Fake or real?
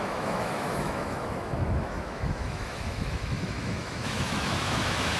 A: fake